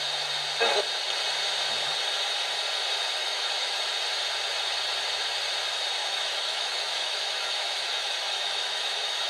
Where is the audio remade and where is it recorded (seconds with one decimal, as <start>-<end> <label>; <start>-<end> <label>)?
0.0-3.2 recorded; 3.2-3.9 remade; 3.9-6.0 recorded; 6.0-9.3 remade